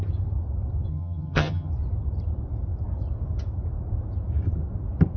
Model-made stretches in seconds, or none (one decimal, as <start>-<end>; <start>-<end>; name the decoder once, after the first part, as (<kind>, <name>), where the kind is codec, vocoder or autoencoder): 0.9-1.7 (vocoder, HiFi-GAN)